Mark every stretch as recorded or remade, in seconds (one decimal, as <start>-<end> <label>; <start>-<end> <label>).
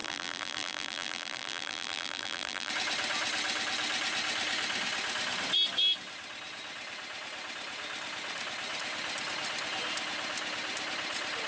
0.0-2.7 remade; 2.7-11.5 recorded